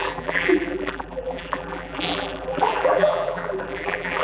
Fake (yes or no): yes